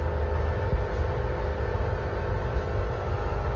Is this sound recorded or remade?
recorded